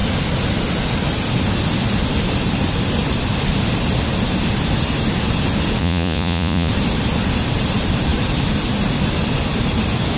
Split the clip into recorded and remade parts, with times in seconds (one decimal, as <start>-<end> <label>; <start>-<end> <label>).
0.0-5.8 recorded; 5.8-6.7 remade; 6.7-10.2 recorded